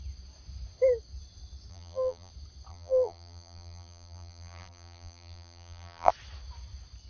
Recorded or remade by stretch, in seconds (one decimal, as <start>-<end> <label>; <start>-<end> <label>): 0.0-1.7 recorded; 1.7-2.3 remade; 2.3-2.7 recorded; 2.7-6.1 remade; 6.1-7.1 recorded